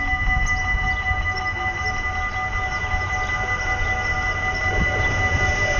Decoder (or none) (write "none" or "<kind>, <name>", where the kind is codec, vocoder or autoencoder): none